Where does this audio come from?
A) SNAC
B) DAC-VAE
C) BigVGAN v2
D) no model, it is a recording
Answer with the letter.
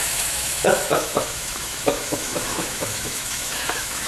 B